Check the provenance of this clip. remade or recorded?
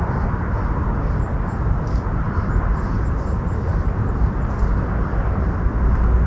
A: recorded